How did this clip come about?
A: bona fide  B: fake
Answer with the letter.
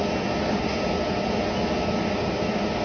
A